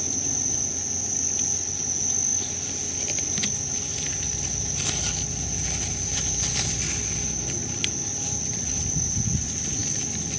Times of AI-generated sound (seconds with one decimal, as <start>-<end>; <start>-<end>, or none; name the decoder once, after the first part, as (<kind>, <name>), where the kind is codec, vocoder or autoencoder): none